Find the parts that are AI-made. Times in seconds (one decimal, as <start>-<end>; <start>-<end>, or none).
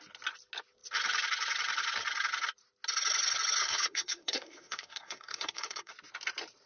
3.6-5.9